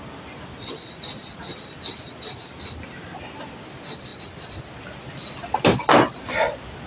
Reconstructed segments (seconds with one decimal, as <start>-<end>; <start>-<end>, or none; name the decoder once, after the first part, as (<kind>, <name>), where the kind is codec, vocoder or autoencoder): none